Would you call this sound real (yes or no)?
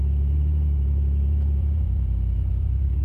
no